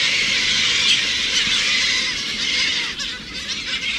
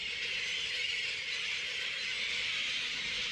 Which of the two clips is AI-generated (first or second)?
second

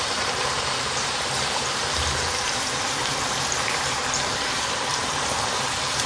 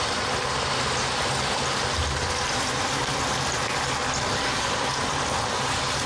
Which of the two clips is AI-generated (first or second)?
first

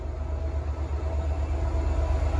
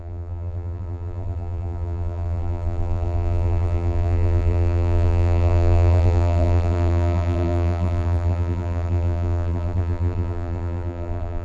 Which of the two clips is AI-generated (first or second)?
second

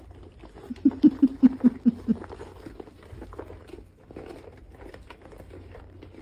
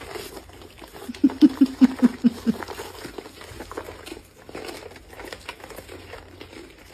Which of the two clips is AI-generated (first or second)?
first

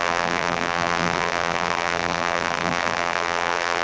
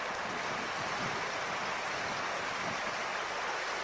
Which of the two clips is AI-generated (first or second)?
first